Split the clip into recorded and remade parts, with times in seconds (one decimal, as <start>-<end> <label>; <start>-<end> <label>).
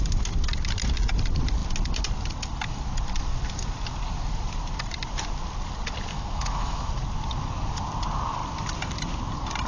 0.0-6.1 recorded; 6.1-6.9 remade; 6.9-9.7 recorded